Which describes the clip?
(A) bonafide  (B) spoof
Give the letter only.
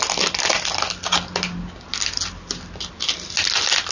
A